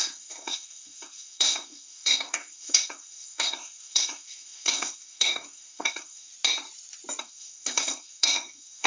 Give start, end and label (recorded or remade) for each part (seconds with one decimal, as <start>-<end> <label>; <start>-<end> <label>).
0.0-6.3 remade; 6.3-7.2 recorded; 7.2-8.9 remade